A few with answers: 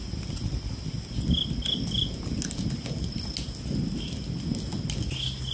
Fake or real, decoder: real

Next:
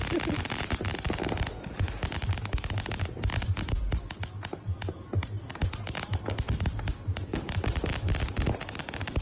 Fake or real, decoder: real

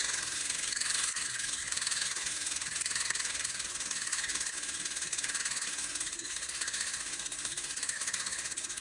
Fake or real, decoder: fake, codec, SNAC